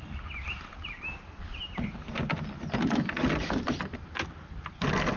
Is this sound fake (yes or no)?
no